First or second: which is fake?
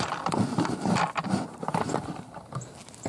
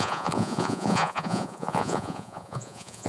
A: second